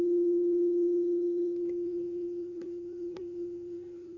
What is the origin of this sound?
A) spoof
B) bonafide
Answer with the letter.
A